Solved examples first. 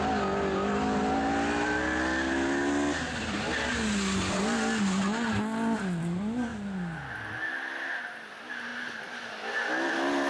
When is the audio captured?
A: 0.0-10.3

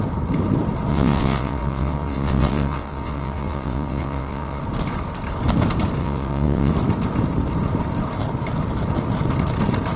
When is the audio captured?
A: 0.0-0.9; 4.6-6.0; 6.7-10.0